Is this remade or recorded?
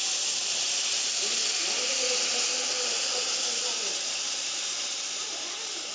recorded